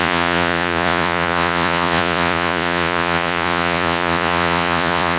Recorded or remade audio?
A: remade